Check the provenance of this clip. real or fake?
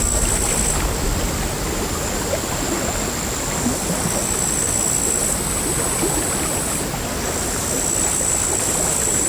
real